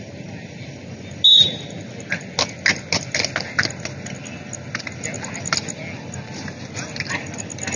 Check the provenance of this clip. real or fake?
real